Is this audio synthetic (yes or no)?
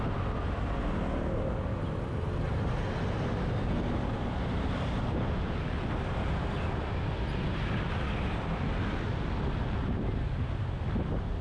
no